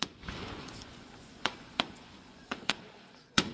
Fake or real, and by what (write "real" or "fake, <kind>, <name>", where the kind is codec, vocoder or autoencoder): fake, vocoder, Vocos